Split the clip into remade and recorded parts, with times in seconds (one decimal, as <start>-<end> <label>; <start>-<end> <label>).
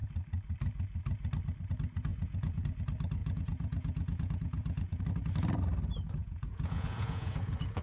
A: 0.0-2.1 recorded; 2.1-2.8 remade; 2.8-3.2 recorded; 3.2-5.0 remade; 5.0-6.2 recorded; 6.2-7.8 remade